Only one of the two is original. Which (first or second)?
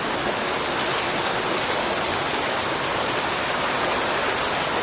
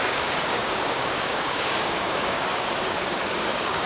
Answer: first